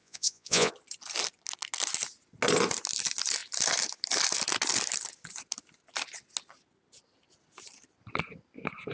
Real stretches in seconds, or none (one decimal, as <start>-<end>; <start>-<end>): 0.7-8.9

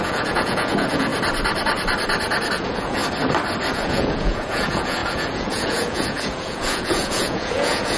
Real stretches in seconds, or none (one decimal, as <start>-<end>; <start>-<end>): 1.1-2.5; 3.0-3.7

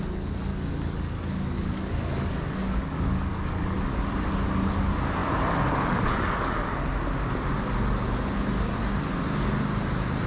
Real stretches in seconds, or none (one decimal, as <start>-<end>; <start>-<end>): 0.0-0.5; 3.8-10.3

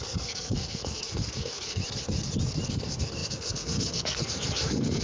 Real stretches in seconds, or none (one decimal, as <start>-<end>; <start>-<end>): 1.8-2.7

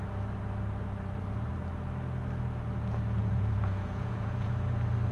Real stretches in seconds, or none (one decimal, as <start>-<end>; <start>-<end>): 0.0-3.2; 4.5-5.1